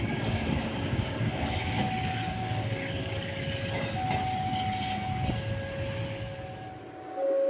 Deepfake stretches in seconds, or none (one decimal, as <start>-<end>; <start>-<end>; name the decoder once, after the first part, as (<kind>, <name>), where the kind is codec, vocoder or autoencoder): 0.0-3.3 (codec, DAC); 7.0-7.5